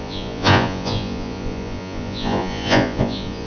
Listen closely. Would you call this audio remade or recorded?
remade